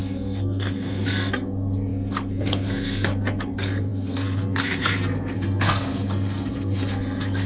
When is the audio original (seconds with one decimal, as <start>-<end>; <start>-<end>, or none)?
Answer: none